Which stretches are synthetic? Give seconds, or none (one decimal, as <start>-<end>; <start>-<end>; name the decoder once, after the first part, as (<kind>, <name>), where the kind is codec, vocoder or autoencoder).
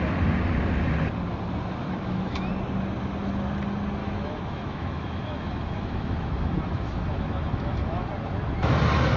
1.8-2.5 (autoencoder, DAC-VAE); 4.0-8.1